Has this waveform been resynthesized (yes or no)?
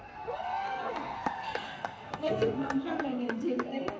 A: yes